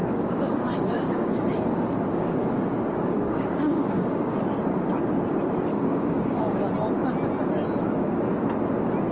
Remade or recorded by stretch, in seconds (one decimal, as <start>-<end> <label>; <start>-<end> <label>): 0.0-4.3 remade; 4.3-5.7 recorded; 5.7-6.7 remade; 6.7-9.1 recorded